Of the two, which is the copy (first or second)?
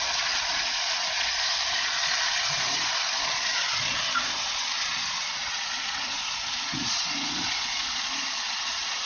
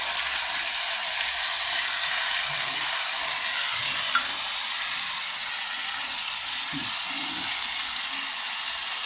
first